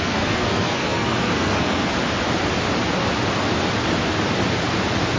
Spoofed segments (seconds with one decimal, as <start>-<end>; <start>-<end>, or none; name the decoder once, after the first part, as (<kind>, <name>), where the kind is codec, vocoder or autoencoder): 0.0-1.9 (codec, SNAC)